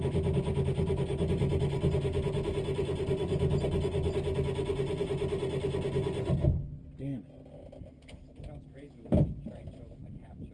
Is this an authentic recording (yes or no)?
yes